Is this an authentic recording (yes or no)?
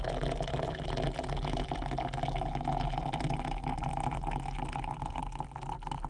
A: yes